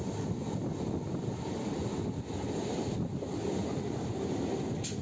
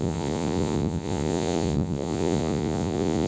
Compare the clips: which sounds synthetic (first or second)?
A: second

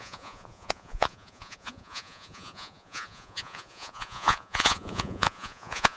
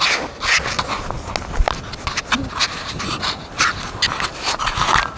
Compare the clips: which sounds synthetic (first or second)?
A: first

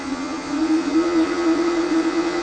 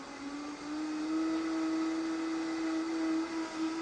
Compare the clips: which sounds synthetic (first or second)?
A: first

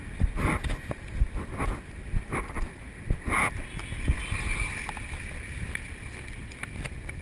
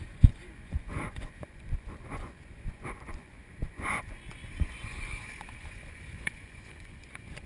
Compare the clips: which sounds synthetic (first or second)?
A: second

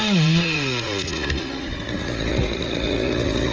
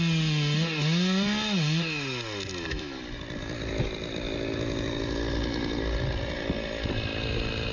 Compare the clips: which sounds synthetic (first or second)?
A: first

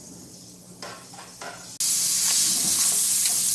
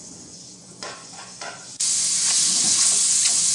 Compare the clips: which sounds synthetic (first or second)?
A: second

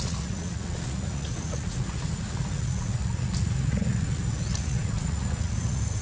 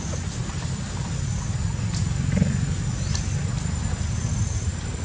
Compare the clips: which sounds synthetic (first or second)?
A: first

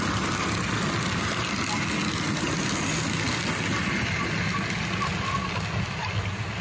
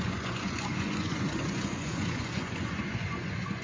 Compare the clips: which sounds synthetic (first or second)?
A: second